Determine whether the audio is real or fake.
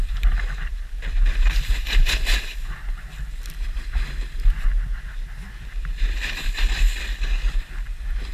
real